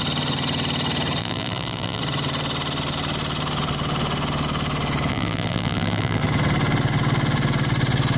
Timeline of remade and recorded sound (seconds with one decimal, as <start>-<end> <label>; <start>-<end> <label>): 0.0-1.2 recorded; 1.2-2.0 remade; 2.0-5.1 recorded; 5.1-6.2 remade; 6.2-8.2 recorded

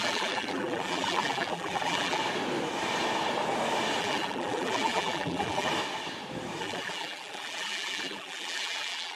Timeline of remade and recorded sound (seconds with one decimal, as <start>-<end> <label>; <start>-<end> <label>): 0.0-2.2 remade; 2.2-4.0 recorded; 4.0-5.7 remade; 5.7-6.6 recorded; 6.6-9.2 remade

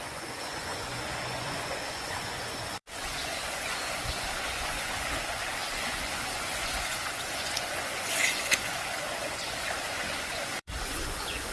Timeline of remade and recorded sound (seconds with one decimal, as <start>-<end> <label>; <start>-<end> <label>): 0.0-11.5 remade

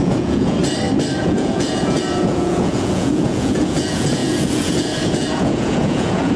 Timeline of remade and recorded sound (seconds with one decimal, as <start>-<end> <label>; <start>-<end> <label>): 0.0-0.6 remade; 0.6-1.2 recorded; 1.2-6.4 remade